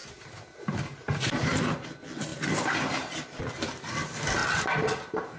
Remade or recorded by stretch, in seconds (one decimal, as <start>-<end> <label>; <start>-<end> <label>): 0.0-5.4 recorded

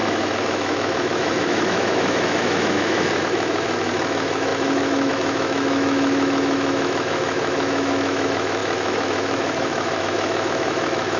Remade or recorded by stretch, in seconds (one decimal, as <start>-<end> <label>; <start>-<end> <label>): 0.0-11.2 remade

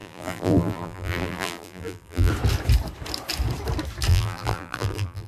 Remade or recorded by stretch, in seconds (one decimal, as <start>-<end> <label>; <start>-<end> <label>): 0.0-2.3 remade; 2.3-4.1 recorded; 4.1-5.3 remade

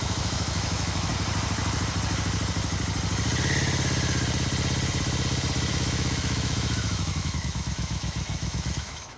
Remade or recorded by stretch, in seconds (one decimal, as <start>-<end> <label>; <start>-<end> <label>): 0.0-1.1 remade; 1.1-5.7 recorded; 5.7-9.2 remade